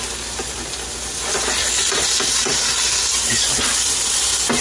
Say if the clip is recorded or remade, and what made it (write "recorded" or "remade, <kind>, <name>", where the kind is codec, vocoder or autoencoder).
recorded